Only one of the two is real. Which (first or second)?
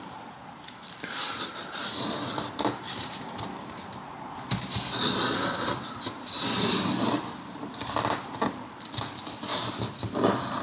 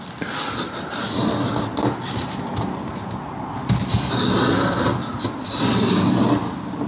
second